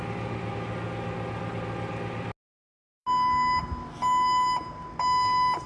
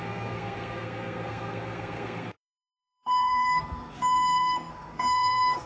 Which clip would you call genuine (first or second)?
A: first